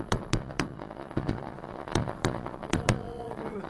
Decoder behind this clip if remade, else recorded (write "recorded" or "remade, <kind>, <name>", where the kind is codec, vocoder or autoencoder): remade, vocoder, Vocos